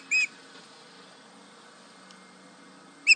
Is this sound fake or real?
real